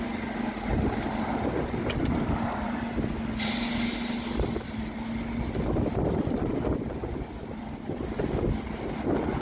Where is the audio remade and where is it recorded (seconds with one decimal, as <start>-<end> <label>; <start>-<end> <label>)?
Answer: 0.0-9.4 recorded